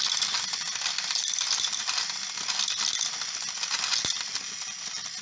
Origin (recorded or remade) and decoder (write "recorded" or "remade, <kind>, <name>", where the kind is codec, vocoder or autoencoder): recorded